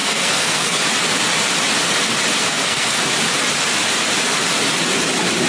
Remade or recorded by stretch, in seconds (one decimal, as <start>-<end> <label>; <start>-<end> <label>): 0.0-0.8 remade; 0.8-2.4 recorded; 2.4-3.0 remade; 3.0-5.5 recorded